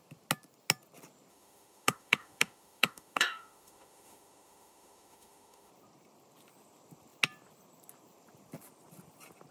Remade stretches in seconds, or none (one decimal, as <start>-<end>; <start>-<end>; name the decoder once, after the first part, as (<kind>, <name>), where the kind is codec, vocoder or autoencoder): 1.3-5.7 (autoencoder, DAC-VAE)